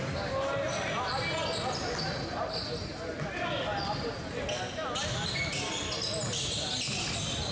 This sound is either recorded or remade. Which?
recorded